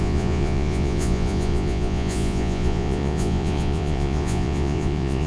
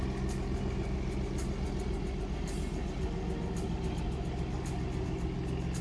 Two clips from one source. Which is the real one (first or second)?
second